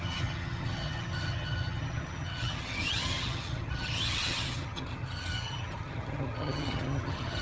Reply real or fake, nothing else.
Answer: fake